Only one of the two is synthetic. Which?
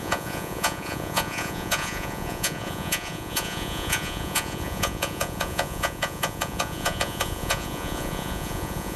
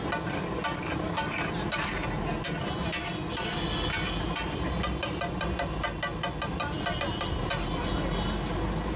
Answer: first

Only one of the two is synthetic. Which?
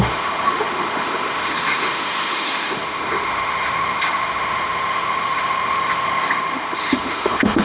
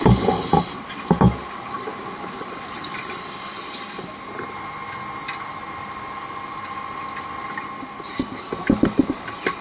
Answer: first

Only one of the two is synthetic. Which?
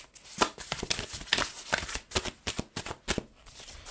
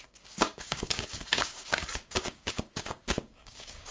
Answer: second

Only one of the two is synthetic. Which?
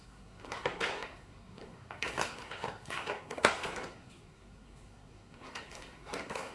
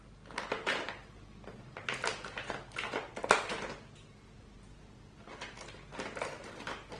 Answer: first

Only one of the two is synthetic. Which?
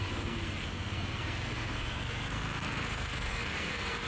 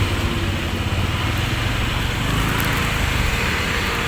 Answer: first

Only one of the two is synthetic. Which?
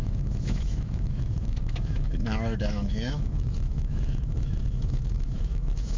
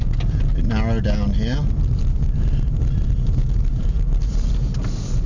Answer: first